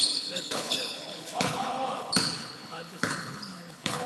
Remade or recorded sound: remade